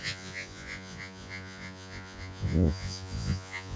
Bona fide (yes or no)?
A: no